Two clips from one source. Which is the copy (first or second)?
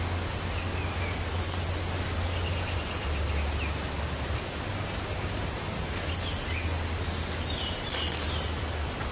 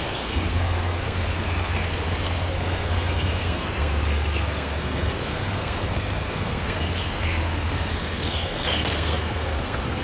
second